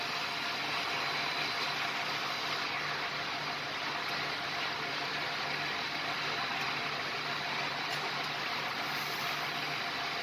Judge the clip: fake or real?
real